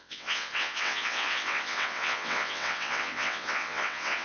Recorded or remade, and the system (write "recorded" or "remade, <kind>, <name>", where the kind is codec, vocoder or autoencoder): remade, vocoder, WaveNeXt